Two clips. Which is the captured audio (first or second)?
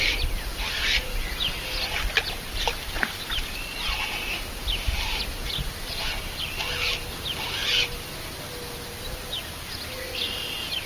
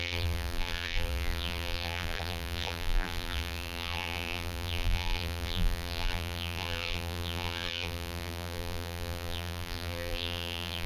first